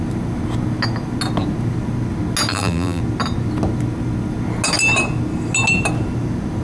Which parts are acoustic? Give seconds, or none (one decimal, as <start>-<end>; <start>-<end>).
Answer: 0.0-2.5; 3.0-6.6